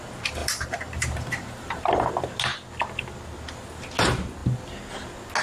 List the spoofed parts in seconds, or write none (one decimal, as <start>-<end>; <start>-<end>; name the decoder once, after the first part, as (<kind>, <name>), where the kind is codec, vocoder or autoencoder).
0.4-2.1 (vocoder, BigVGAN v2)